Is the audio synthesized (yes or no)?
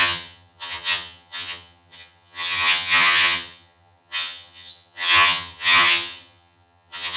yes